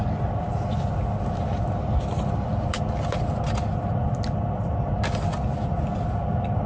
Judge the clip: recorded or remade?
recorded